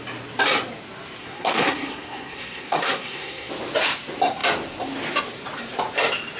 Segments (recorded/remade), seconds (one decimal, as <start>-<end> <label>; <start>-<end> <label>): 0.0-1.2 recorded; 1.2-3.5 remade; 3.5-6.4 recorded